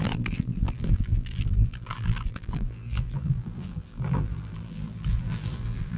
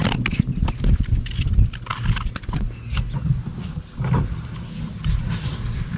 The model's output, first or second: first